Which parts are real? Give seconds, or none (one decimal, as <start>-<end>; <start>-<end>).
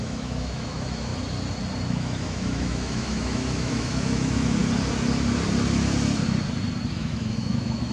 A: 1.1-1.9; 4.6-6.9